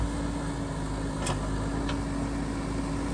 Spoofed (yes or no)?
no